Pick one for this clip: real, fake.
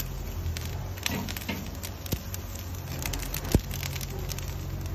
real